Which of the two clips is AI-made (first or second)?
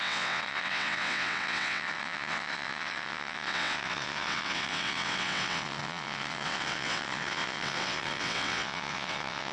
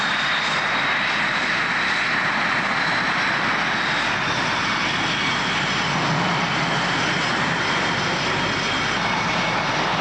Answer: first